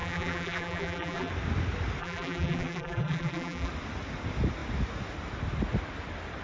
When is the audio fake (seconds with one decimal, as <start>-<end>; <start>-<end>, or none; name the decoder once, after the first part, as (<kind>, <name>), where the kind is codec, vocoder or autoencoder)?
0.0-1.3 (vocoder, BigVGAN v2); 2.0-3.7